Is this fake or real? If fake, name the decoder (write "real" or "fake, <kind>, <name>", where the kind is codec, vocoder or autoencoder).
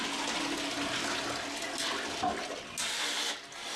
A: real